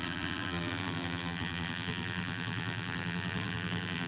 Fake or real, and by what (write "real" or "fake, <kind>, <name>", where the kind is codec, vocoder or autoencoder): fake, vocoder, BigVGAN v2